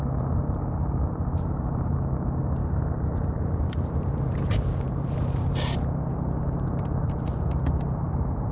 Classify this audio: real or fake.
fake